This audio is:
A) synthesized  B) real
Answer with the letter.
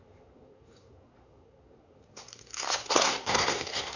A